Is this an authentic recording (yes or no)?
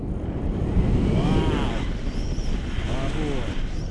yes